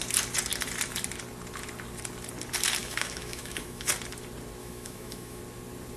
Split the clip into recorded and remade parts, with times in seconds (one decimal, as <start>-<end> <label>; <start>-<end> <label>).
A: 0.0-2.8 recorded; 2.8-3.9 remade; 3.9-4.6 recorded; 4.6-5.4 remade; 5.4-6.0 recorded